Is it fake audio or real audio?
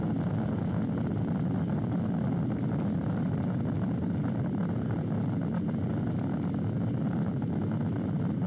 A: real